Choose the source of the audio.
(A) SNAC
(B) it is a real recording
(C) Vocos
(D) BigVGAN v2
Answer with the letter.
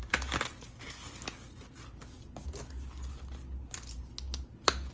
B